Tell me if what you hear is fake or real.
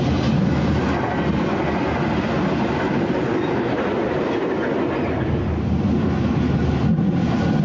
real